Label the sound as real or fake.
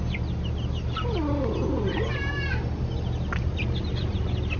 real